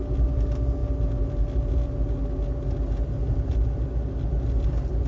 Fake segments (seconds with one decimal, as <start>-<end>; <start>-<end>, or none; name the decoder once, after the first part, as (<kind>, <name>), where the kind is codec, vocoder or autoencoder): none